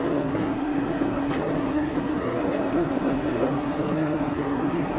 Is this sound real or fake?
fake